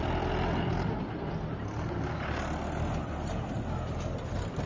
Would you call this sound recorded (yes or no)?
yes